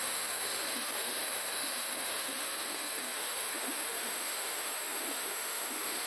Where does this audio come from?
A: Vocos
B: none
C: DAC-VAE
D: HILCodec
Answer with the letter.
C